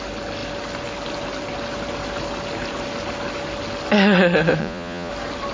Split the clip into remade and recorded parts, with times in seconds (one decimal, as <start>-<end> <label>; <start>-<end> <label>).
0.0-4.6 recorded; 4.6-5.1 remade; 5.1-5.5 recorded